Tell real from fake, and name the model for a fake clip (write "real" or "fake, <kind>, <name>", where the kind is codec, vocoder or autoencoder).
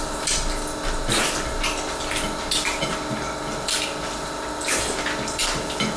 real